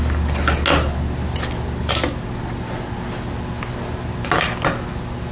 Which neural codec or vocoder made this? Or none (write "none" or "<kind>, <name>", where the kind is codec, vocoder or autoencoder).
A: none